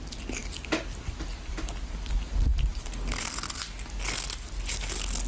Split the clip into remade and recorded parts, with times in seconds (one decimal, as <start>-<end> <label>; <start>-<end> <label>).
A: 0.0-5.3 recorded